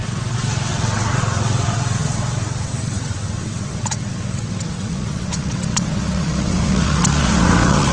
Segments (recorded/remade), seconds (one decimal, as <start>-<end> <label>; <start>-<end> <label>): 0.0-7.9 remade

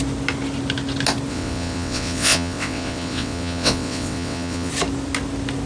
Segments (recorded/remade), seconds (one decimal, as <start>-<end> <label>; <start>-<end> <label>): 0.0-1.3 recorded; 1.3-4.7 remade; 4.7-5.7 recorded

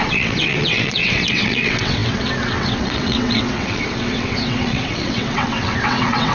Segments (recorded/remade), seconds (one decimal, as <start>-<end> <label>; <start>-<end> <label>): 0.0-6.3 remade

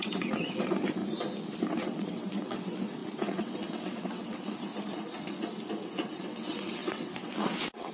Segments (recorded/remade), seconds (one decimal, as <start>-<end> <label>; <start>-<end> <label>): 0.0-1.0 remade; 1.0-1.6 recorded; 1.6-4.7 remade; 4.7-5.8 recorded; 5.8-7.9 remade